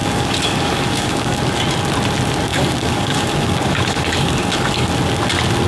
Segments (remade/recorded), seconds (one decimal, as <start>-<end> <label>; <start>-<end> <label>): 0.0-1.4 remade; 1.4-2.5 recorded; 2.5-4.9 remade; 4.9-5.7 recorded

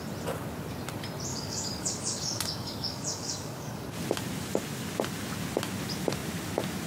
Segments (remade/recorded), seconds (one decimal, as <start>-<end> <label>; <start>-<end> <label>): 0.0-1.3 recorded; 1.3-3.8 remade; 3.8-6.9 recorded